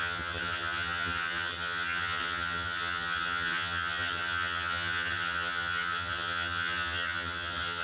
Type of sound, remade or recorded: remade